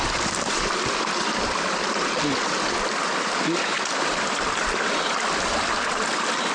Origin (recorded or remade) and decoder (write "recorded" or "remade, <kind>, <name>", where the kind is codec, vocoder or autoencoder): recorded